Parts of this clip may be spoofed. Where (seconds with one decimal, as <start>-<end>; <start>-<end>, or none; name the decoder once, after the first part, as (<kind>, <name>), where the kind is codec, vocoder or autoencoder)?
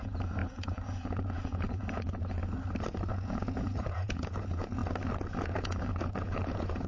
0.0-2.4 (vocoder, Vocos); 3.1-4.8; 5.4-6.9